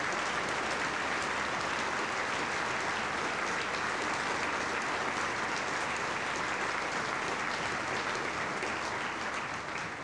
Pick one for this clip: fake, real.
real